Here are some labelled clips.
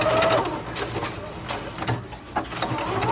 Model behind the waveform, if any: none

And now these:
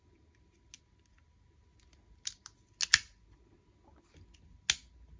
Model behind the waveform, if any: none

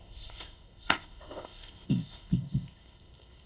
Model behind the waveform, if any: codec, ZipCodec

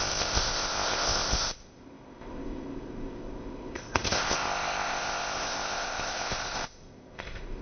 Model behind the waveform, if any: codec, ZipCodec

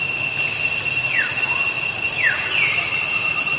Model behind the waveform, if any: none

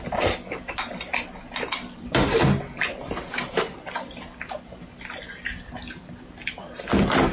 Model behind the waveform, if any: none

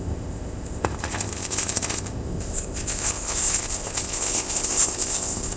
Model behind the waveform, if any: codec, ZipCodec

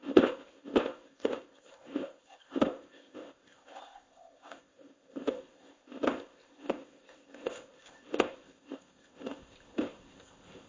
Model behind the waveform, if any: codec, ZipCodec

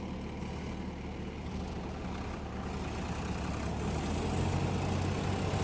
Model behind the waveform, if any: none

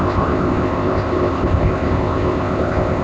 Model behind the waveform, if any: codec, ZipCodec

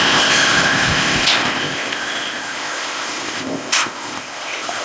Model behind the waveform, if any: codec, ZipCodec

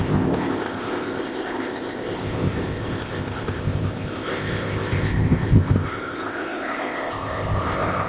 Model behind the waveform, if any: codec, ZipCodec